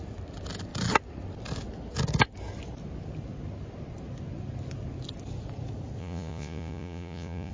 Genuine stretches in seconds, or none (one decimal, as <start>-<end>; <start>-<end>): 0.0-6.0